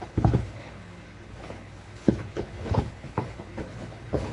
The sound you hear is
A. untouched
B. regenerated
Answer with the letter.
B